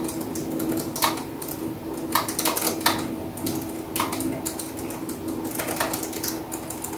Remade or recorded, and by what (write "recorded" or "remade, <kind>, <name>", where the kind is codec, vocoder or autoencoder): recorded